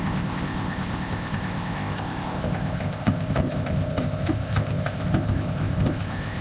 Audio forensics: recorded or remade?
remade